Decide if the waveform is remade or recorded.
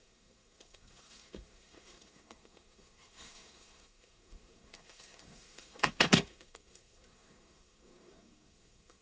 remade